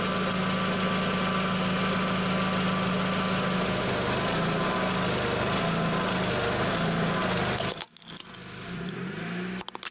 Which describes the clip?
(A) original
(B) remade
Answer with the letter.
A